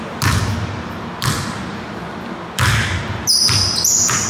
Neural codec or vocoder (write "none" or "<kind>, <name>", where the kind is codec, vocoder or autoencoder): none